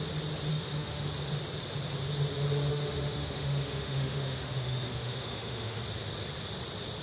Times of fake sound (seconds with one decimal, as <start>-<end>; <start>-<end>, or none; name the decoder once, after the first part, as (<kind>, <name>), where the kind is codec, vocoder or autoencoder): 0.5-1.1 (autoencoder, DAC-VAE); 2.7-5.8